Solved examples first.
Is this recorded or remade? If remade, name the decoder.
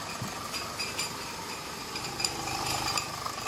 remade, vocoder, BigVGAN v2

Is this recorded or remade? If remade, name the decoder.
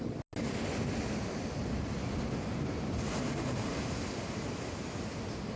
recorded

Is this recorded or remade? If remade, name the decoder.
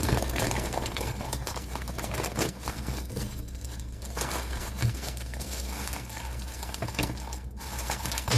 remade, codec, SNAC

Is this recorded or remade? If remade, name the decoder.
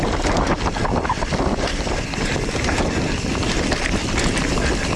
recorded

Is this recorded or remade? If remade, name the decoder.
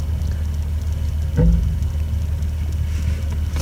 recorded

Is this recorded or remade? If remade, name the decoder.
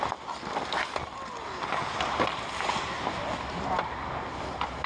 recorded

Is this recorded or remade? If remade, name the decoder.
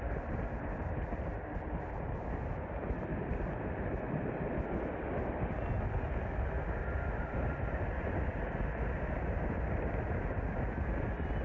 recorded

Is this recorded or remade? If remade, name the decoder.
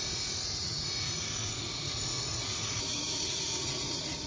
remade, vocoder, Vocos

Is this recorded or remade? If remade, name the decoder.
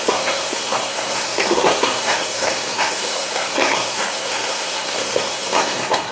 remade, codec, SNAC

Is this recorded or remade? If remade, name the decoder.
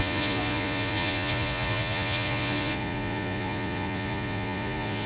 remade, vocoder, Vocos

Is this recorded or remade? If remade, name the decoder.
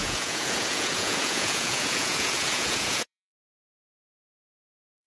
remade, vocoder, Vocos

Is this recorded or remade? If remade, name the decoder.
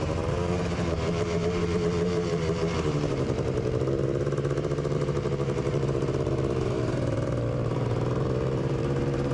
remade, vocoder, BigVGAN v2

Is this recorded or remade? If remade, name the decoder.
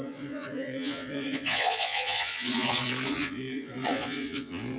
remade, vocoder, Vocos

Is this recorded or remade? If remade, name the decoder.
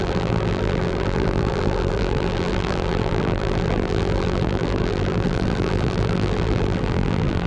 remade, vocoder, BigVGAN v2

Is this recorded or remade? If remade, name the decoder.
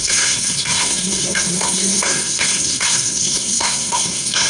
remade, codec, SNAC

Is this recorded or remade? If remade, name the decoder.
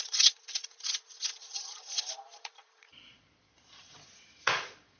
remade, vocoder, Vocos